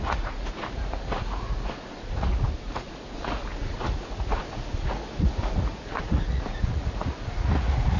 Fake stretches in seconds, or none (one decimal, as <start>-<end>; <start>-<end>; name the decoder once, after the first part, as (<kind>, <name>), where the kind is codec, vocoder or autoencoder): 0.0-8.0 (vocoder, Vocos)